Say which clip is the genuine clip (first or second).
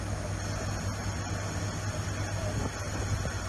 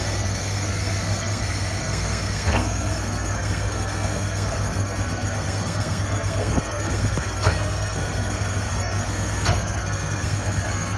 first